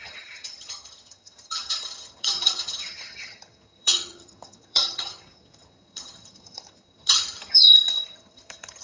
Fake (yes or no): yes